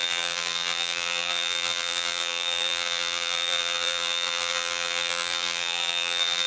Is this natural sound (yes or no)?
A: no